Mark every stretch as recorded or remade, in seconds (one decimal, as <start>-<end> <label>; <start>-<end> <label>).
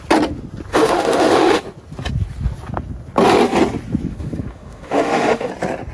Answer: 0.0-0.7 recorded; 0.7-1.6 remade; 1.6-4.1 recorded; 4.1-5.5 remade; 5.5-5.9 recorded